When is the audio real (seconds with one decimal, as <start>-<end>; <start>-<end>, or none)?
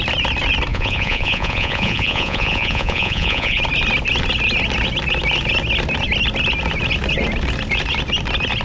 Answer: 0.0-0.7; 3.6-8.6